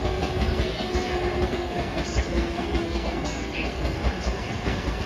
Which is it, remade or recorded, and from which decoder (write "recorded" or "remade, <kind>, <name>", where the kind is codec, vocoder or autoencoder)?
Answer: remade, codec, SNAC